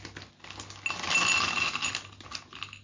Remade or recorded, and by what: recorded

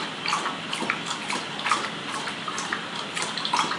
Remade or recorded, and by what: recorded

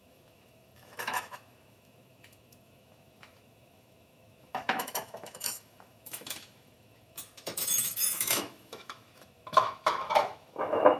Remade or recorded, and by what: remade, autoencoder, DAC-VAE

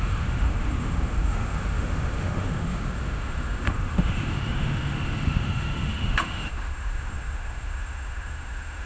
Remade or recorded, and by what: remade, autoencoder, DAC-VAE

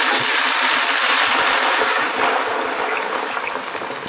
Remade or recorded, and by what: recorded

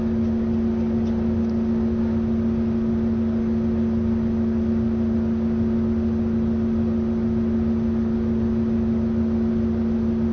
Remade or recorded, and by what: recorded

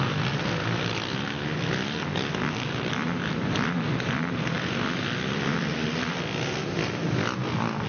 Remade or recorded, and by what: recorded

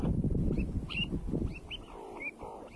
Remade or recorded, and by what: recorded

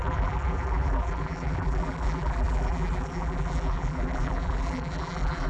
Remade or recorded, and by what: remade, vocoder, BigVGAN v2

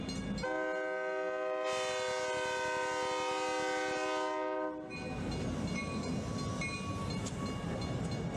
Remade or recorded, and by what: recorded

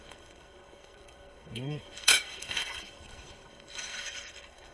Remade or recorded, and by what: remade, codec, SNAC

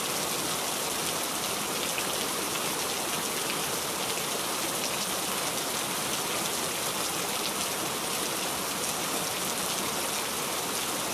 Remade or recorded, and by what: recorded